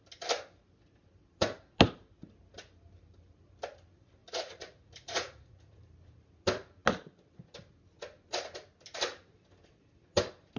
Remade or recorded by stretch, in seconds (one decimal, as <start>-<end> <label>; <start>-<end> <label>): 0.0-4.2 recorded; 4.2-5.8 remade; 5.8-10.6 recorded